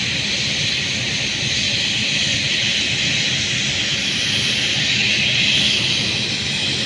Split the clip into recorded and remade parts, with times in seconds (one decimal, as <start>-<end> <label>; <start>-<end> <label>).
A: 0.0-6.9 recorded